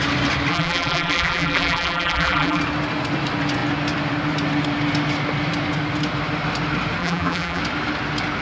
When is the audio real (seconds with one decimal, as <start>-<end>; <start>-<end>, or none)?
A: 0.0-0.5; 2.6-7.0; 7.6-8.4